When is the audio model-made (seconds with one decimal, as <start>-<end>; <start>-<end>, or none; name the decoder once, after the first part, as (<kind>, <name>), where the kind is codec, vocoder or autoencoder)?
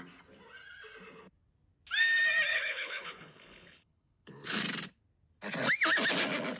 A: 2.5-4.6 (codec, HILCodec)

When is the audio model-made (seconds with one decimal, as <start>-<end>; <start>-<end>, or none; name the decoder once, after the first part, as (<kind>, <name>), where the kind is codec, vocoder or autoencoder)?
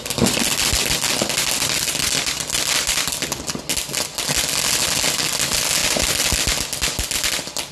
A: none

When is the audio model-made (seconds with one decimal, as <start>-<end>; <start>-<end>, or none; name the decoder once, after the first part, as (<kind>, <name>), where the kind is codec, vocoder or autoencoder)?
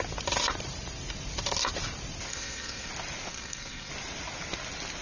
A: 2.3-2.9 (codec, SNAC); 3.3-3.9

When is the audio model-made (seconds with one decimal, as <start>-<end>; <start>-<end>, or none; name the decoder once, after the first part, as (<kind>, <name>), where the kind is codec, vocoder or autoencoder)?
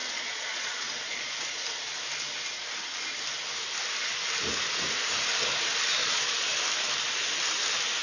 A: 0.0-1.2 (vocoder, Vocos); 6.0-6.6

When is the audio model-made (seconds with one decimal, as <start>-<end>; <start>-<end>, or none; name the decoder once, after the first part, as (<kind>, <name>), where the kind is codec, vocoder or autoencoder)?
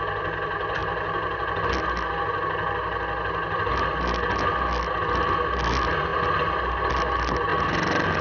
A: none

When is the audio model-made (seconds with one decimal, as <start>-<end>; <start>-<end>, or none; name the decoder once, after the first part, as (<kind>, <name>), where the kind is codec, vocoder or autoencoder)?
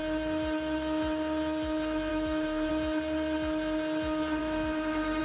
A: 2.1-2.7 (autoencoder, DAC-VAE); 4.4-5.2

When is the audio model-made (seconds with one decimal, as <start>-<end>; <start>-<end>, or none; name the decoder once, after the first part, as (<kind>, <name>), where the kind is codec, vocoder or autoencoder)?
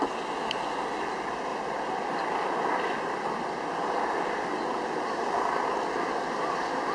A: 1.5-2.2 (vocoder, BigVGAN v2)